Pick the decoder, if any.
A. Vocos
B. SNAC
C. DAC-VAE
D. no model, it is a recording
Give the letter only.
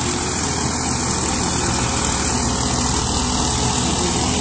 D